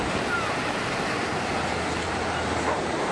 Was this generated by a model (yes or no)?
no